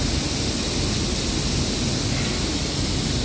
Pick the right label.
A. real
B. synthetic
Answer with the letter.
A